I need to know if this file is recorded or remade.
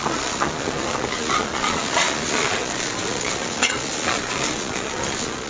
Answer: remade